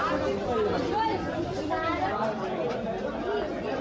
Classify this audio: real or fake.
real